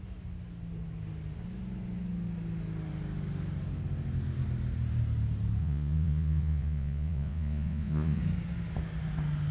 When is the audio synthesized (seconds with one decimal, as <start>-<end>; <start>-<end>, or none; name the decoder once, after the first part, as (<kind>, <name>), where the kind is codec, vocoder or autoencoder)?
5.6-8.2 (vocoder, Vocos)